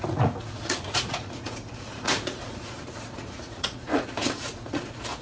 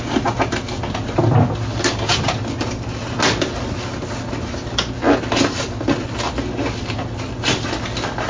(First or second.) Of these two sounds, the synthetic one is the first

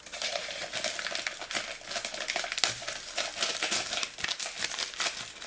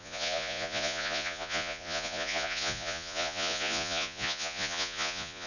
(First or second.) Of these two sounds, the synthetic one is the second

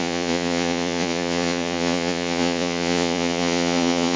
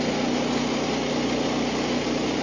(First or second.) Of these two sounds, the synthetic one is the first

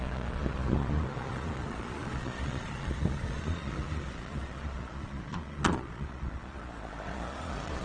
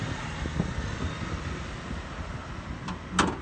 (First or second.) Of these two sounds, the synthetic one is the first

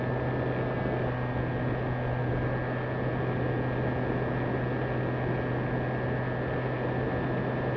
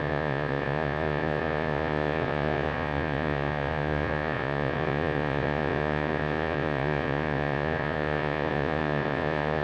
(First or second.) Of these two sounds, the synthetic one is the second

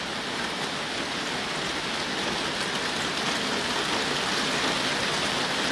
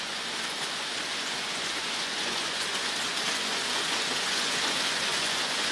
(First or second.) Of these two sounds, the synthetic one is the second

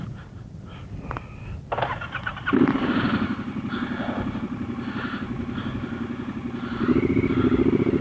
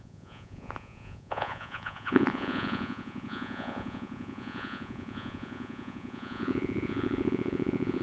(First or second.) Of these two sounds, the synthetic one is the second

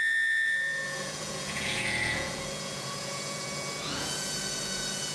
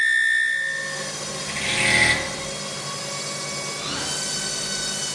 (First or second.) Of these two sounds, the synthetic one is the first